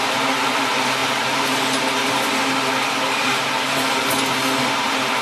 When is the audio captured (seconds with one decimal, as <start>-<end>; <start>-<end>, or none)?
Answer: 2.0-4.6